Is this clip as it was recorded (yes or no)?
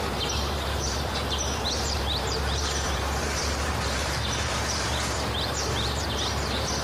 no